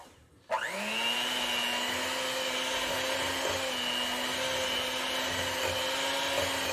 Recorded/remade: recorded